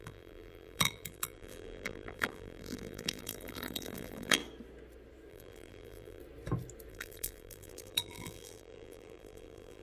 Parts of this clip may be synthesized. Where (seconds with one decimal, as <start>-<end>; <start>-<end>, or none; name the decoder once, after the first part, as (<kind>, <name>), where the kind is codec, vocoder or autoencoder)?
0.0-4.4 (vocoder, BigVGAN v2); 5.3-6.2; 6.9-9.8